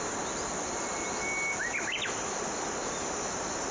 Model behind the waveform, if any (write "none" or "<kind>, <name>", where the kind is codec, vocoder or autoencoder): none